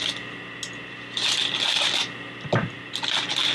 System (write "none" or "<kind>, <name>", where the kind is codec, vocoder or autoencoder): none